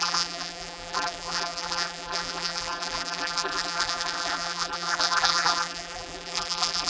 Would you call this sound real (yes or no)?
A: no